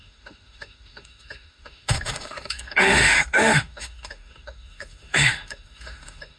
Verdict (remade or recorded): remade